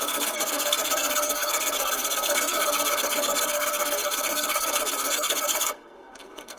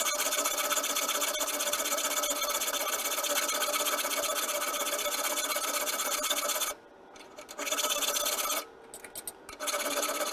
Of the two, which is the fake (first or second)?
first